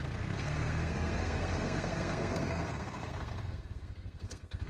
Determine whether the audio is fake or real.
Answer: fake